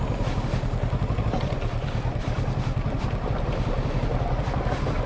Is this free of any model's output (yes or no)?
no